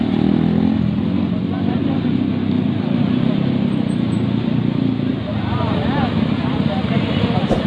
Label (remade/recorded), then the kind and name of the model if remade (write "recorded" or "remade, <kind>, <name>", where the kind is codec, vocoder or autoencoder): recorded